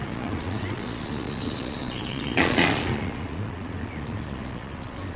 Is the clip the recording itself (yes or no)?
no